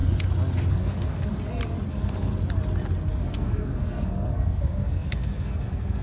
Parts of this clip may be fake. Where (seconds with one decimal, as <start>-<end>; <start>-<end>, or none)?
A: 0.7-1.3; 1.9-2.3; 3.1-6.0

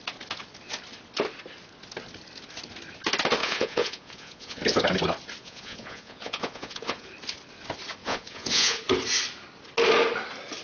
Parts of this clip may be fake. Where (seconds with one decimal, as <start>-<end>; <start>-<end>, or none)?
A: 3.4-4.6; 5.4-7.1; 8.0-8.8

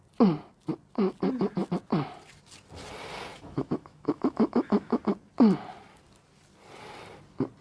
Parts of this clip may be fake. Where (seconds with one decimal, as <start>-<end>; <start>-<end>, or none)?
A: 3.3-5.0

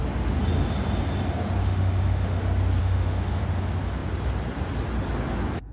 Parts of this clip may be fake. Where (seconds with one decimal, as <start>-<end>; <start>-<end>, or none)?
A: 1.6-2.4; 2.8-3.4

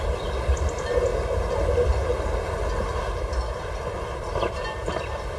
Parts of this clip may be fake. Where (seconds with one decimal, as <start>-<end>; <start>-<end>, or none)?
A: none

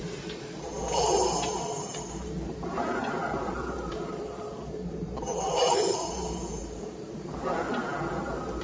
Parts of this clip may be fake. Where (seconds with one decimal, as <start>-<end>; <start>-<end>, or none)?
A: 0.0-8.6

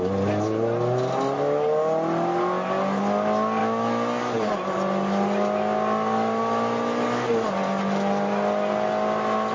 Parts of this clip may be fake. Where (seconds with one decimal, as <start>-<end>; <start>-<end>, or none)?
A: none

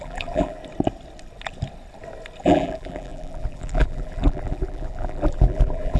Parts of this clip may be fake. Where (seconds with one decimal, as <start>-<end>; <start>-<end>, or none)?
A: 0.0-0.6; 2.4-6.0